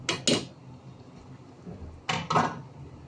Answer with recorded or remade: recorded